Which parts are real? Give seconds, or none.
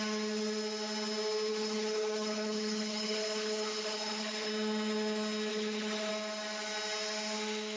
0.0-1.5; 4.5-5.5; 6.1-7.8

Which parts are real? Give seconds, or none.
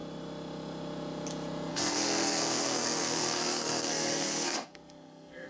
0.0-1.7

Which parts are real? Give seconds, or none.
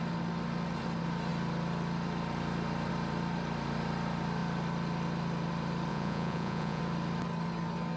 0.0-5.9; 6.8-8.0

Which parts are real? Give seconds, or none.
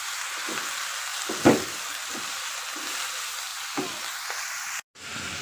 0.0-5.4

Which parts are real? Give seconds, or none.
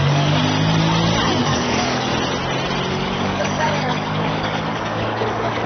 0.4-1.4; 2.1-2.9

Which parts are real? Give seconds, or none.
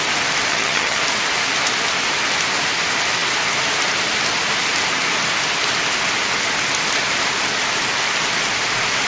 0.0-0.5; 1.0-9.1